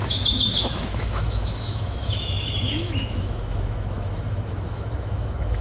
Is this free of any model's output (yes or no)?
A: no